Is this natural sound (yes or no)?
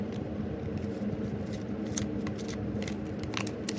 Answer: yes